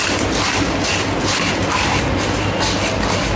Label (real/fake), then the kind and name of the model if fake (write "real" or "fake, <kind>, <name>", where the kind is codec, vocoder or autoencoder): real